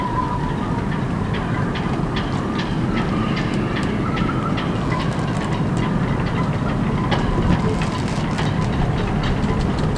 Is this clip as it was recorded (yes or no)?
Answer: yes